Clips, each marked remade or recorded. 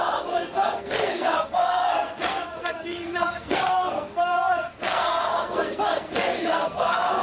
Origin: remade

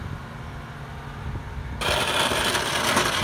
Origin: recorded